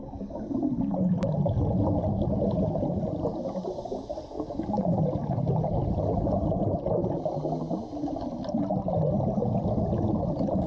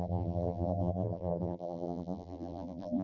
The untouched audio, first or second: first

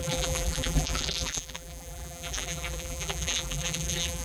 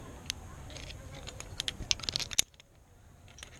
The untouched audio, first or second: second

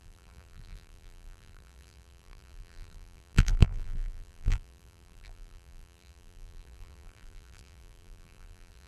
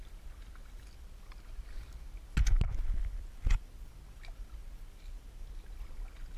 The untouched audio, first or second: second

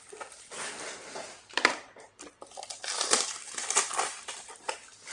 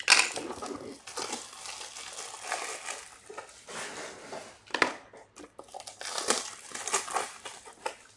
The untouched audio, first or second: second